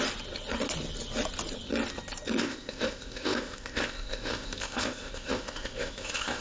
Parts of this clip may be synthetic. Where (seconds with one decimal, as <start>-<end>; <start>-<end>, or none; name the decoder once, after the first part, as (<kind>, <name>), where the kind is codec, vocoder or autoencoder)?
2.4-6.4 (codec, ZipCodec)